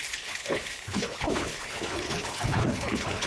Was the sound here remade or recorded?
remade